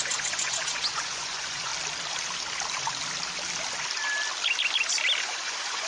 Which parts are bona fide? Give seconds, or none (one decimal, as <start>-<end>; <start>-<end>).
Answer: 1.7-5.2